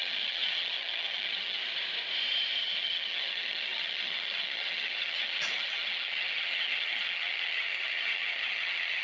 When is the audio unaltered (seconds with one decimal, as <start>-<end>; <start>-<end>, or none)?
1.6-2.6